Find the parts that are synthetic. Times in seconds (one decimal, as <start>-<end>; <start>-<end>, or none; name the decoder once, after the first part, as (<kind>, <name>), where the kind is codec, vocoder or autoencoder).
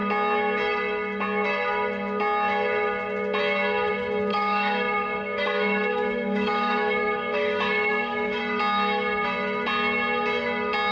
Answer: 4.3-8.4 (codec, DAC)